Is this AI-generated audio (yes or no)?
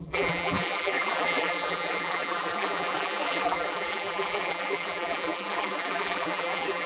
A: yes